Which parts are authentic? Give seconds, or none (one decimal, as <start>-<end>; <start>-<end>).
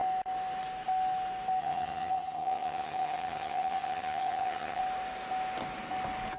0.0-1.6; 4.8-6.4